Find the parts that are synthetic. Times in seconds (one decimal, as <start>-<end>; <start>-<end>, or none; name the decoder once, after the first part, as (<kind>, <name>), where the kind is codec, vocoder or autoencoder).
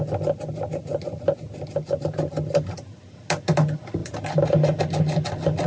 none